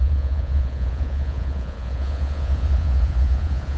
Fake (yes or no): yes